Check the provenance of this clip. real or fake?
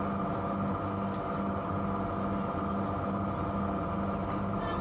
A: real